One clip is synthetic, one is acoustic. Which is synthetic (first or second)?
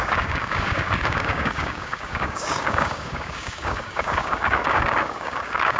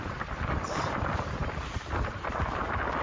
first